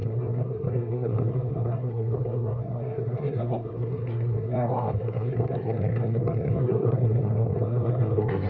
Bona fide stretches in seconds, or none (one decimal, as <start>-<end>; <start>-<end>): none